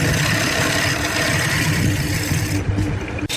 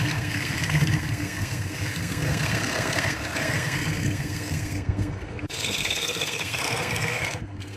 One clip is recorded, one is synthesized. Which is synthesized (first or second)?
second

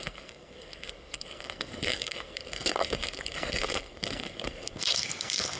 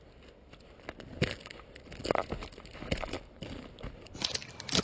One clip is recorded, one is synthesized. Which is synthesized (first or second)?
first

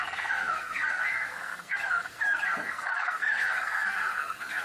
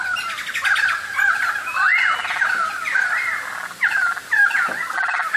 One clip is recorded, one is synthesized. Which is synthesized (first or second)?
first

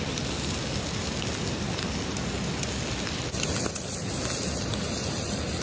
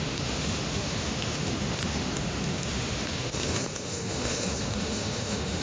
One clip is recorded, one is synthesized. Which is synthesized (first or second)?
second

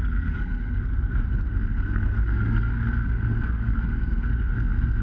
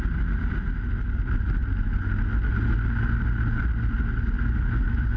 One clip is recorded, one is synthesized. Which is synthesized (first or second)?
first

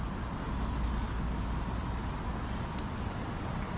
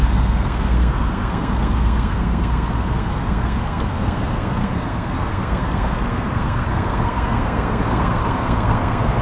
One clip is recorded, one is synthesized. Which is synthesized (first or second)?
second